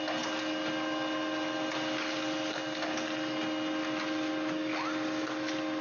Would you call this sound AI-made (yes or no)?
no